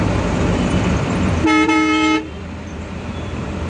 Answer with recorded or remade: remade